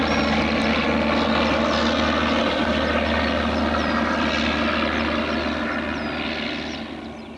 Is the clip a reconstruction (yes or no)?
no